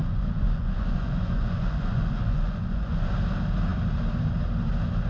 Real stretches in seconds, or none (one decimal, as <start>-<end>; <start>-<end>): 3.1-5.1